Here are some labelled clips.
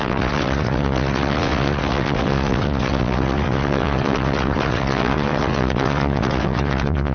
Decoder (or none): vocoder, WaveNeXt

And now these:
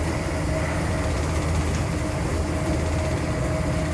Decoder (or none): none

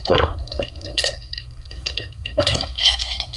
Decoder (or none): codec, SNAC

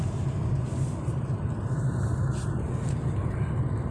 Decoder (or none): none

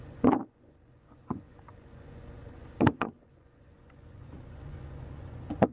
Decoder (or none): vocoder, Vocos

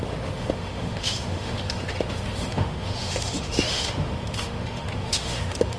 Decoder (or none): autoencoder, DAC-VAE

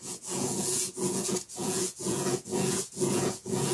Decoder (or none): vocoder, Vocos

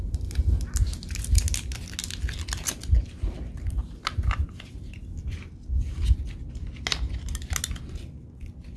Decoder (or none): none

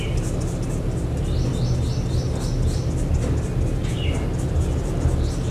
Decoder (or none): none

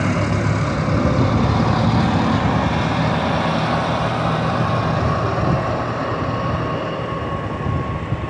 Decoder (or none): none